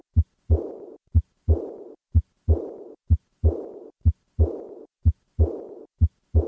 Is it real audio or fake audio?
real